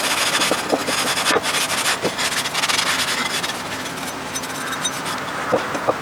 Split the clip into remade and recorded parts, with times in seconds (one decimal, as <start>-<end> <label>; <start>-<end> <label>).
0.0-6.0 recorded